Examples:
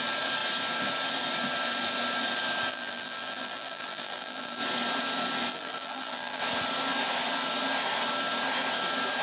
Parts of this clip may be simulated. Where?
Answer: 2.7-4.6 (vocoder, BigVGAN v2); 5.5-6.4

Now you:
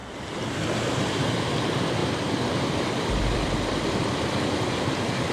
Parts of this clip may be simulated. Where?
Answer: 2.0-5.3 (vocoder, BigVGAN v2)